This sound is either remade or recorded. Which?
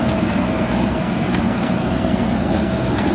remade